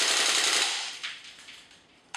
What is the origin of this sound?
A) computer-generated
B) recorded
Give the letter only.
B